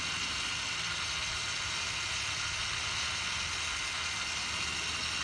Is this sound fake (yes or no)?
no